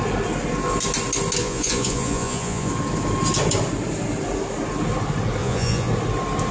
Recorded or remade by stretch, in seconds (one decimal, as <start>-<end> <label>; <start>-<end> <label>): 0.0-1.4 recorded; 1.4-2.7 remade; 2.7-5.4 recorded; 5.4-5.9 remade; 5.9-6.5 recorded